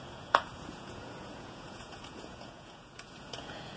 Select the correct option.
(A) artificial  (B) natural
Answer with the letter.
A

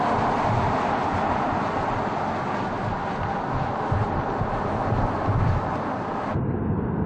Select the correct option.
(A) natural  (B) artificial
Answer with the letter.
A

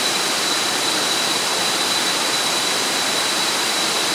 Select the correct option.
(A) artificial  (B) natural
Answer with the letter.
A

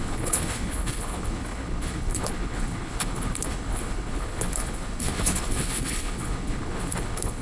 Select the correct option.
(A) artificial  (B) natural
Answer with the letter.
A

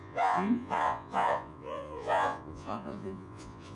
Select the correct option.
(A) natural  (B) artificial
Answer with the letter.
B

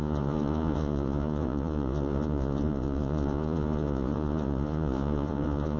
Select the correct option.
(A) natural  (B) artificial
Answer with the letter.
B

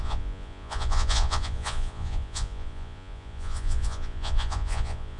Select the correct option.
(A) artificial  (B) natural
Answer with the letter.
A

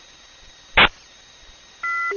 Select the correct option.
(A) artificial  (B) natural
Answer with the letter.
B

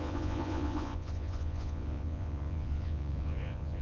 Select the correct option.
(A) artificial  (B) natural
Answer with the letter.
A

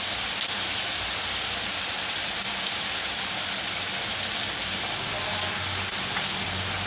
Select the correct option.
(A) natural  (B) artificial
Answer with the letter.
B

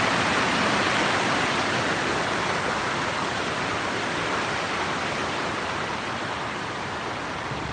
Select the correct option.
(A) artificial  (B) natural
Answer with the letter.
B